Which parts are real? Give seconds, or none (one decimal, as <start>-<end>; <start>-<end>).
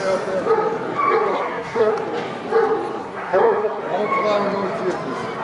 0.0-1.3; 1.9-3.0; 3.8-5.4